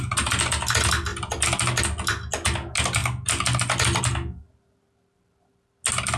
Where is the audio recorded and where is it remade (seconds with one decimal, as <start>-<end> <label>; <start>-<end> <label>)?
0.0-6.2 recorded

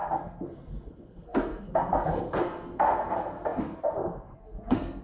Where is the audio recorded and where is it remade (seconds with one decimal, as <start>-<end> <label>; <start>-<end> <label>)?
0.0-5.0 remade

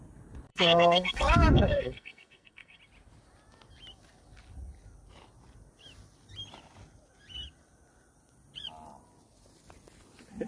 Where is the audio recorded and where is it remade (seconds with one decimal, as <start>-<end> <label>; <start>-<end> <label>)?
0.0-0.5 recorded; 0.5-2.8 remade; 2.8-10.5 recorded

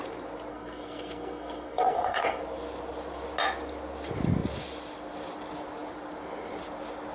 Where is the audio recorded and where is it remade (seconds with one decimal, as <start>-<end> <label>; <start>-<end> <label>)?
0.0-0.5 recorded; 0.5-2.4 remade; 2.4-7.1 recorded

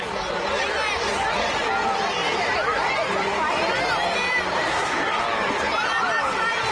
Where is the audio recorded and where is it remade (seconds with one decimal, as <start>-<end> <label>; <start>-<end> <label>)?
0.0-4.7 recorded; 4.7-5.2 remade; 5.2-6.7 recorded

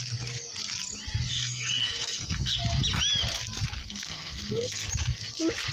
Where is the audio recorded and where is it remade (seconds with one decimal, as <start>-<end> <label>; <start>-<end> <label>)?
0.0-1.3 recorded; 1.3-2.6 remade; 2.6-3.8 recorded; 3.8-4.9 remade; 4.9-5.7 recorded